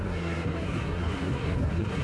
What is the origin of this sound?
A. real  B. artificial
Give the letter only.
B